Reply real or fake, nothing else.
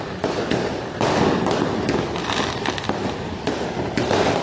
real